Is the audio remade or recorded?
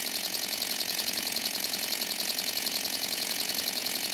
remade